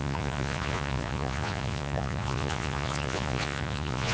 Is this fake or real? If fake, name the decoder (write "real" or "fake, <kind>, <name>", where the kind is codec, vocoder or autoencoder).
fake, vocoder, Vocos